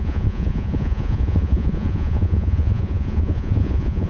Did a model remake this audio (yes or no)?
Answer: yes